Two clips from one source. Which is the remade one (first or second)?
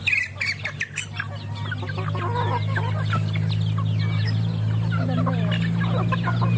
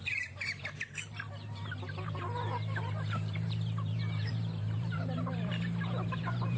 second